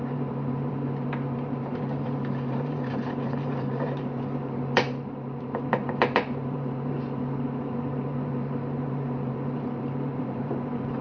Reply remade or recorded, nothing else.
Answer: remade